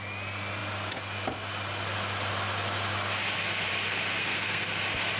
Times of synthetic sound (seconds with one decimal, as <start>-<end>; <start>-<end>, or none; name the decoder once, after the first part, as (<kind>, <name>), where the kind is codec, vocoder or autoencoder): 4.2-4.8 (codec, SNAC)